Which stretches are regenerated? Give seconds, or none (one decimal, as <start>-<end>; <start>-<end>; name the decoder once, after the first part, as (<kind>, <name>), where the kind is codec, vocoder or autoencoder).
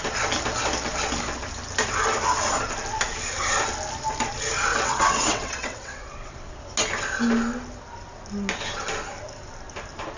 4.7-6.5 (vocoder, WaveNeXt)